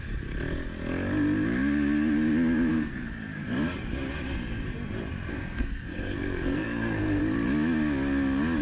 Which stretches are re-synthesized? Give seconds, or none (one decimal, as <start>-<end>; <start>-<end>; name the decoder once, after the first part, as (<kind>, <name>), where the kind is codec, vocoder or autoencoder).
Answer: 2.7-3.4 (codec, SNAC); 5.3-7.2